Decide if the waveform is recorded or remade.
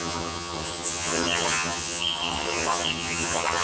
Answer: remade